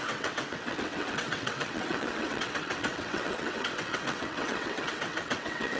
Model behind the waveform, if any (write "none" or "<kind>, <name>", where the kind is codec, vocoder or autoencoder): vocoder, WaveNeXt